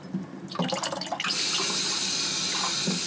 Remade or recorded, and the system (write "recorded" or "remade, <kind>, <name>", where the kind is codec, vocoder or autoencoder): recorded